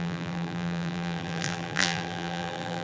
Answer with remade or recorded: remade